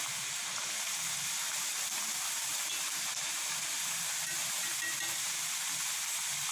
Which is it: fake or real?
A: fake